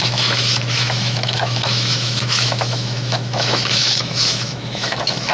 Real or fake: fake